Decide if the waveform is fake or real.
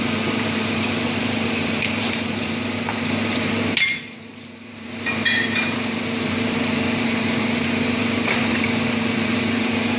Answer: fake